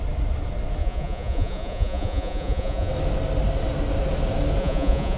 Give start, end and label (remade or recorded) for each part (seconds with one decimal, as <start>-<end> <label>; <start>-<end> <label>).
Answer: 0.0-0.8 recorded; 0.8-2.9 remade; 2.9-4.6 recorded; 4.6-5.2 remade